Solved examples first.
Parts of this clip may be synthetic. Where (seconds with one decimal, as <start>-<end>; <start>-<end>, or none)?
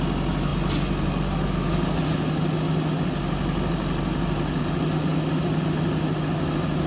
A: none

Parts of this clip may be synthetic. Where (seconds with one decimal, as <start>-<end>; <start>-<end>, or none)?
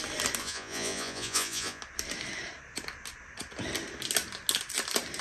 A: 0.4-1.8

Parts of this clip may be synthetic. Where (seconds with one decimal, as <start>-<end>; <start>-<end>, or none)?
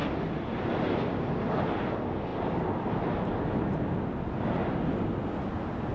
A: none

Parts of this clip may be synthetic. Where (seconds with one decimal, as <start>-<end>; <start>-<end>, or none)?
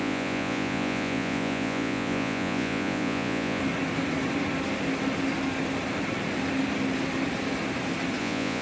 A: 0.0-3.6; 8.2-8.6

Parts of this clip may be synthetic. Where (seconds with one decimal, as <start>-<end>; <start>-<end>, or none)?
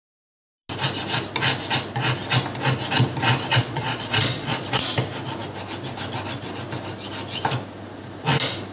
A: 3.5-4.8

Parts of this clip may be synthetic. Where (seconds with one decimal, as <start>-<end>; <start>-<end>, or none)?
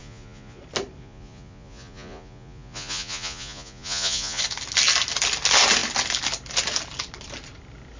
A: 0.0-0.6; 1.0-4.4